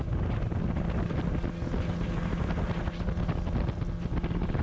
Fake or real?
real